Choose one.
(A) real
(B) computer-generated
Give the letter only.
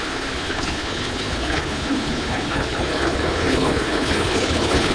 B